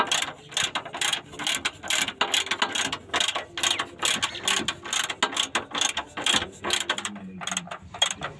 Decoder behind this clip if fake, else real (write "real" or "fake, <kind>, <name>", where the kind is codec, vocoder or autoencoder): real